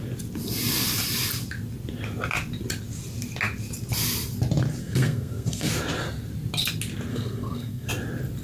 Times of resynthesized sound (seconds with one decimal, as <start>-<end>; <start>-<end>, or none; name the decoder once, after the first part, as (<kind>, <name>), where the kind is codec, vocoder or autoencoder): 4.8-5.7 (codec, SNAC); 7.1-7.9